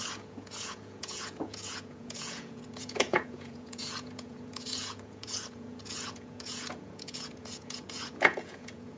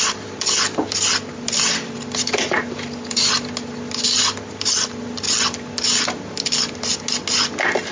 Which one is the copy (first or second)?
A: first